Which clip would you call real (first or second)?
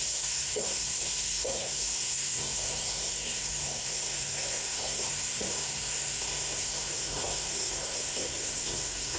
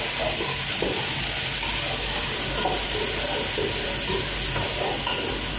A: second